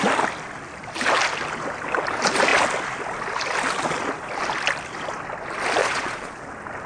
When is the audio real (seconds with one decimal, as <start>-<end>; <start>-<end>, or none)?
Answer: 0.0-5.8; 6.4-6.9